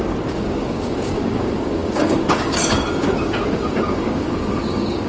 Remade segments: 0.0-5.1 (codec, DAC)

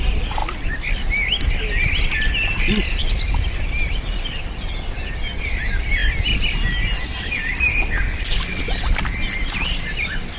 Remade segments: none

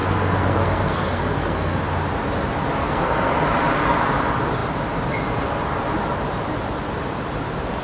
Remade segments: 0.0-1.8 (codec, SNAC); 2.8-3.3

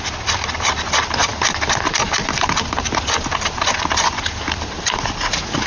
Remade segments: none

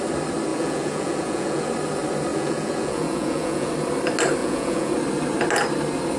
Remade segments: 0.5-1.7 (vocoder, Vocos); 2.3-3.7; 4.4-4.9